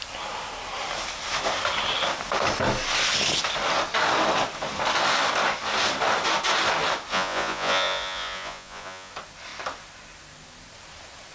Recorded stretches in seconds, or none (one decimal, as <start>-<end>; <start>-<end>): 0.0-7.1; 9.1-11.3